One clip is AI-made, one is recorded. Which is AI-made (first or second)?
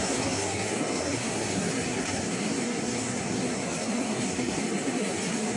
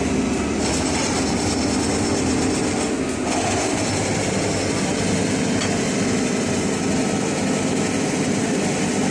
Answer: first